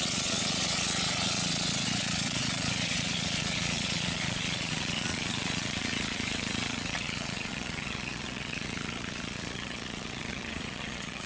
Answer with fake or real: fake